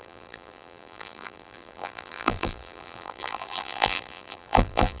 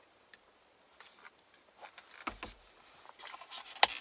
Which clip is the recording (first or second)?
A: second